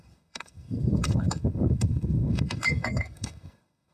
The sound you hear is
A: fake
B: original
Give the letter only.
A